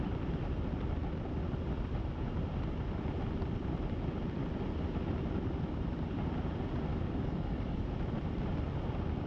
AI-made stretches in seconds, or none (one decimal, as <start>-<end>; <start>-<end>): 6.9-7.9